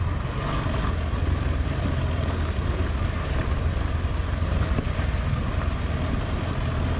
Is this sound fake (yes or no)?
no